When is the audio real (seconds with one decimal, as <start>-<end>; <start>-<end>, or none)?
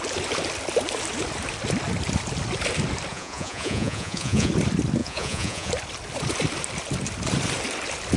0.0-3.1; 4.5-5.0; 5.7-8.2